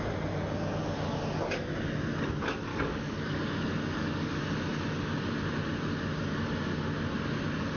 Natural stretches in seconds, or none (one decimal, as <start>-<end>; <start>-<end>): 0.0-2.7; 4.4-7.8